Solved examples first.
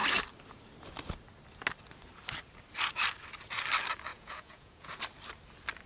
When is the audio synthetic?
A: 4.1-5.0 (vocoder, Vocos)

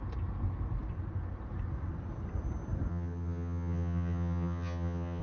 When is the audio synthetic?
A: 2.9-5.2 (vocoder, HiFi-GAN)

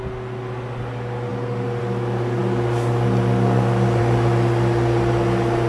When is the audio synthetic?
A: none

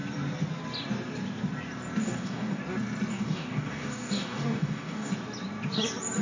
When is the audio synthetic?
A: 2.0-2.6 (codec, DAC); 3.1-5.1

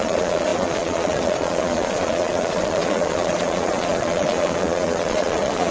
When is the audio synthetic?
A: 0.0-5.7 (vocoder, Vocos)

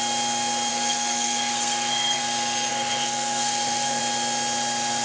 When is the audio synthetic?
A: 0.7-2.2 (codec, SNAC); 2.7-4.0

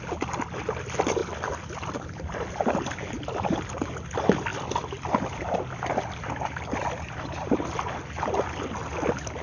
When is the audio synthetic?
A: none